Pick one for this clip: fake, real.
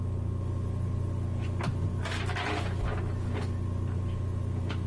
real